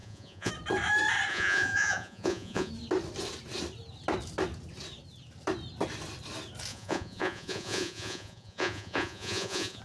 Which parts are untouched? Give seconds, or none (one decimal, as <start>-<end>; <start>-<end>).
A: 0.5-1.3; 2.7-6.7